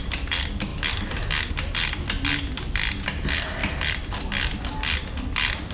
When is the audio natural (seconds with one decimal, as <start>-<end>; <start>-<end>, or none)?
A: 0.0-3.6; 4.6-5.7